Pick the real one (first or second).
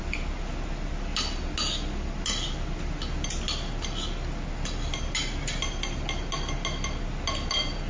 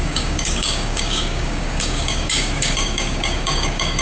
first